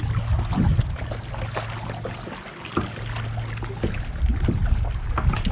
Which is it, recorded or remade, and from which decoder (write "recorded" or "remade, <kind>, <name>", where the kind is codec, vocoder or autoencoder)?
recorded